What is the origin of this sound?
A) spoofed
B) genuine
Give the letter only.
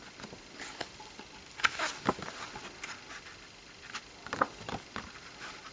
B